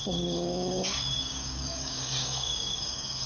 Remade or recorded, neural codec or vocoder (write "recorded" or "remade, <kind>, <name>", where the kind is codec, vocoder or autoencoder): remade, codec, DAC